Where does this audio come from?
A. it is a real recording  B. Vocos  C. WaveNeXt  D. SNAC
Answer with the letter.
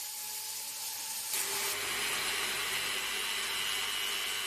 A